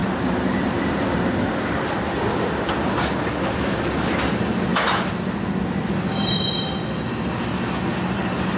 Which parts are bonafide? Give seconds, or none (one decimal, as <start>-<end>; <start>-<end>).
0.0-8.6